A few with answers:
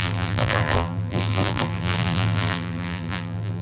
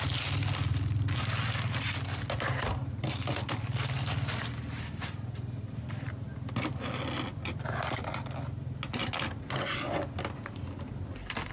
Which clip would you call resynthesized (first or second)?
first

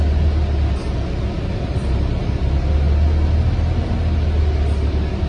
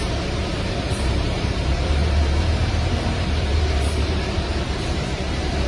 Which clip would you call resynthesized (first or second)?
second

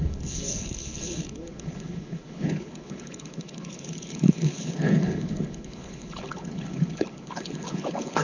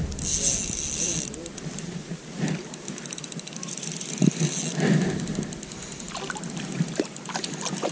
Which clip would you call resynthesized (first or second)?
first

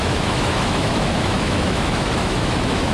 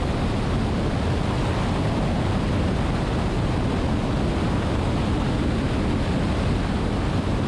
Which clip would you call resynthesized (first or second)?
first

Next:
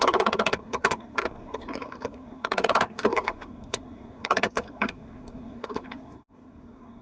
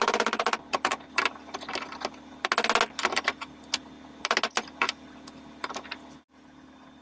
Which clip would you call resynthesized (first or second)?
first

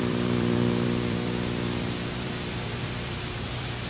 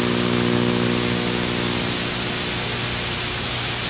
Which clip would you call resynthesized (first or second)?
first